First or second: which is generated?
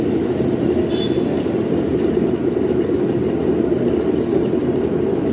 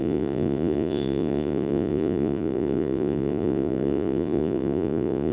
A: second